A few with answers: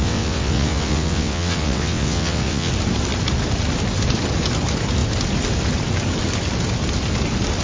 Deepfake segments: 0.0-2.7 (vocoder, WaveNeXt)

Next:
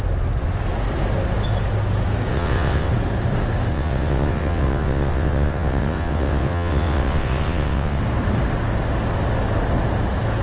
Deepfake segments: 2.3-2.9 (vocoder, WaveNeXt); 3.7-8.0